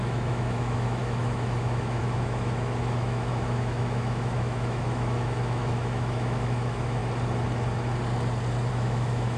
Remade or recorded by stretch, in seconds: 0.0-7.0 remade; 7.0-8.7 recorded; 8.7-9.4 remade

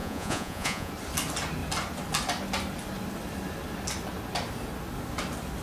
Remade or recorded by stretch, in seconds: 0.0-0.9 remade; 0.9-5.6 recorded

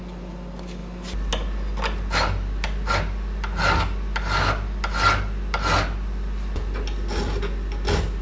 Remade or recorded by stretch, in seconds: 0.0-8.2 recorded